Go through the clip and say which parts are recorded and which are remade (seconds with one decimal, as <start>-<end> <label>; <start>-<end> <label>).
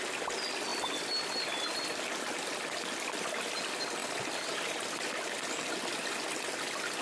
0.0-7.0 recorded